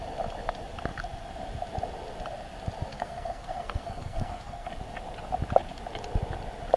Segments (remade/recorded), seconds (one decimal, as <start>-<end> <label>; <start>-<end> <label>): 0.0-2.9 recorded; 2.9-4.7 remade; 4.7-6.8 recorded